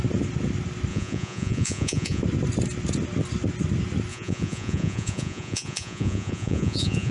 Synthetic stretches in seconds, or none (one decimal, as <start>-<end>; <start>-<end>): 0.9-2.2; 4.1-7.1